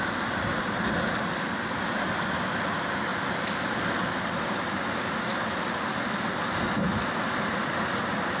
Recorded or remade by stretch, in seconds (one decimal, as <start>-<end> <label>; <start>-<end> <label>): 0.0-8.4 recorded